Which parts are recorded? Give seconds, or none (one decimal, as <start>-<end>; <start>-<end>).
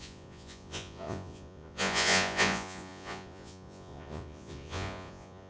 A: none